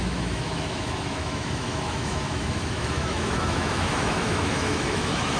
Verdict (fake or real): fake